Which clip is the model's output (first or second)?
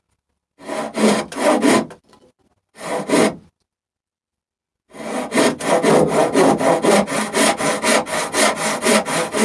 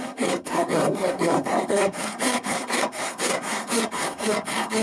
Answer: second